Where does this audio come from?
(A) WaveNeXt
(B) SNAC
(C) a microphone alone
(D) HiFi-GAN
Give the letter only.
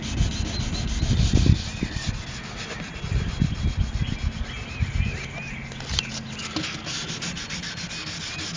C